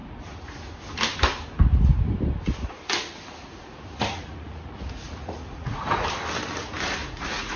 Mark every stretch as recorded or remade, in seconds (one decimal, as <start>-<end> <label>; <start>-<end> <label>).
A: 0.0-0.8 remade; 0.8-3.4 recorded; 3.4-5.8 remade; 5.8-7.0 recorded; 7.0-7.6 remade